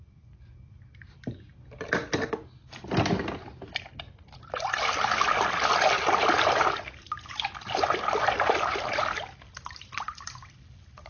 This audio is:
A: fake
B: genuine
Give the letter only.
B